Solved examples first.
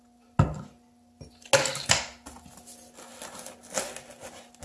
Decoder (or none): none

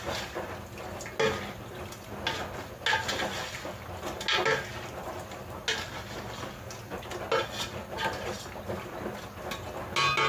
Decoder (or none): none